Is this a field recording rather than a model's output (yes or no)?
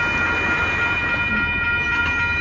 yes